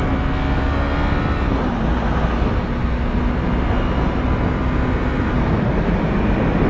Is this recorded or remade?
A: recorded